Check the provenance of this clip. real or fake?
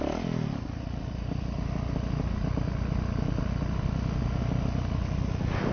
real